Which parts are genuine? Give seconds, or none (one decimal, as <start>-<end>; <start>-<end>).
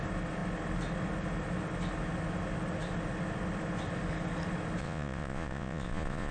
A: 0.0-4.8